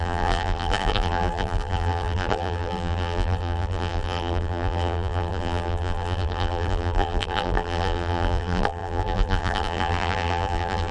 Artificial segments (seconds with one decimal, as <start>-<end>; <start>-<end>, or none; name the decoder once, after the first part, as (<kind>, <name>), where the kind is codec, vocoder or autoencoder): 0.0-10.9 (vocoder, BigVGAN v2)